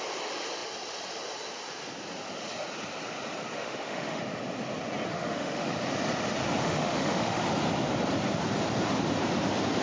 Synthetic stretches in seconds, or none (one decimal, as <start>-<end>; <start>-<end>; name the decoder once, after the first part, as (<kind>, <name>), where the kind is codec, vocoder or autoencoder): 3.6-4.2 (autoencoder, DAC-VAE); 5.1-5.7; 6.6-7.4